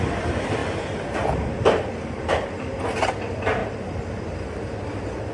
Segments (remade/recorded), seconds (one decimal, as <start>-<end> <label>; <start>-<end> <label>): 0.0-5.3 recorded